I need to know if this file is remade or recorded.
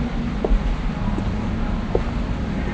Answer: recorded